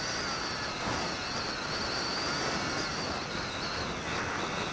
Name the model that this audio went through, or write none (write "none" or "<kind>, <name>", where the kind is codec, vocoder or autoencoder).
none